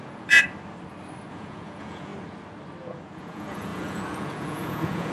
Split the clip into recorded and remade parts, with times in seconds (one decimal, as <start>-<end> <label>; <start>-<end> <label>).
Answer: 0.0-0.4 remade; 0.4-1.3 recorded; 1.3-2.1 remade; 2.1-2.8 recorded; 2.8-5.1 remade